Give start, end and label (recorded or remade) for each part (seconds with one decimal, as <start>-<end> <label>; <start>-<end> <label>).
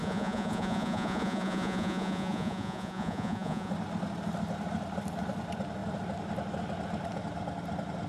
0.0-3.7 remade; 3.7-8.1 recorded